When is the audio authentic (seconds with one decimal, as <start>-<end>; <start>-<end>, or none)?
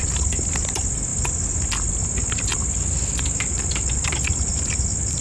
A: 0.0-5.2